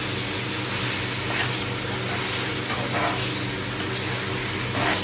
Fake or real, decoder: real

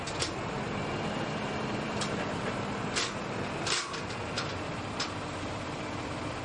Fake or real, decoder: fake, vocoder, BigVGAN v2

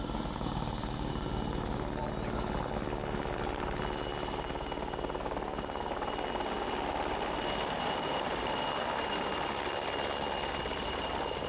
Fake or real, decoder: real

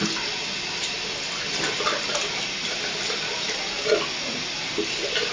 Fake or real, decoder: fake, vocoder, BigVGAN v2